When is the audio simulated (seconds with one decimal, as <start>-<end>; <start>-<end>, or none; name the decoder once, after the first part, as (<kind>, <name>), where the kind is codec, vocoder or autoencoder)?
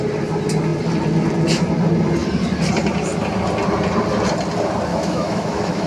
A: 4.9-5.9 (autoencoder, DAC-VAE)